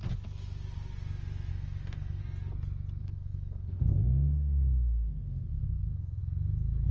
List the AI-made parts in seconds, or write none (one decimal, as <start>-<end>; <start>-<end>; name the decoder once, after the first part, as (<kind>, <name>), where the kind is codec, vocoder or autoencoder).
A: 1.5-2.2 (codec, SNAC); 3.0-6.2